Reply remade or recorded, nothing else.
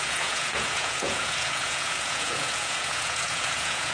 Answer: remade